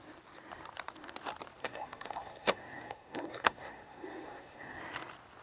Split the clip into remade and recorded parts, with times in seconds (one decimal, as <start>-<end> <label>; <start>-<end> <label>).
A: 0.0-1.6 recorded; 1.6-4.8 remade; 4.8-5.4 recorded

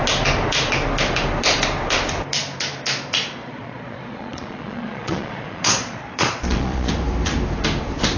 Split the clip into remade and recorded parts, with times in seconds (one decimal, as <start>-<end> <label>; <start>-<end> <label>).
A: 0.0-3.4 recorded; 3.4-6.9 remade; 6.9-8.2 recorded

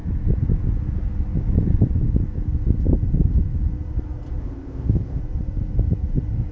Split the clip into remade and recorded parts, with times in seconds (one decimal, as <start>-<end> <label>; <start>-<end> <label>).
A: 0.0-4.4 recorded; 4.4-5.2 remade; 5.2-6.5 recorded

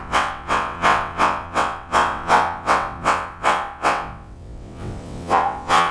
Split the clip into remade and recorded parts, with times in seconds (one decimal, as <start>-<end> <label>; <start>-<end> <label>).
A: 0.0-5.9 remade

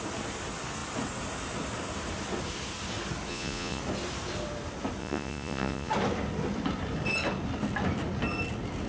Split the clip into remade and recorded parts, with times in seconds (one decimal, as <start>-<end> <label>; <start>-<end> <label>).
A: 0.0-3.3 recorded; 3.3-3.8 remade; 3.8-5.0 recorded; 5.0-5.9 remade; 5.9-8.9 recorded

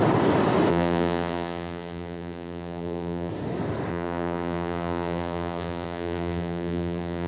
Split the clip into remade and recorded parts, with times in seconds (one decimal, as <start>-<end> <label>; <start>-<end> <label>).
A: 0.0-0.7 recorded; 0.7-3.3 remade; 3.3-3.9 recorded; 3.9-7.3 remade

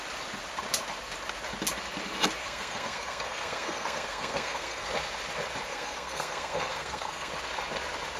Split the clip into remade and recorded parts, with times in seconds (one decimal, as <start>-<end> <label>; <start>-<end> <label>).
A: 0.0-2.4 recorded; 2.4-4.9 remade; 4.9-5.7 recorded; 5.7-7.3 remade; 7.3-8.2 recorded

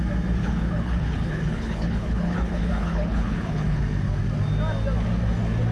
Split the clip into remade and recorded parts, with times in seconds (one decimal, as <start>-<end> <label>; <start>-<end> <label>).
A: 0.0-0.4 recorded; 0.4-3.8 remade; 3.8-5.7 recorded